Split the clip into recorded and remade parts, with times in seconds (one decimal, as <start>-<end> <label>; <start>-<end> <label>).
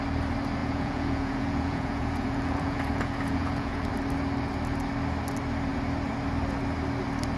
0.0-0.6 recorded; 0.6-3.9 remade; 3.9-7.4 recorded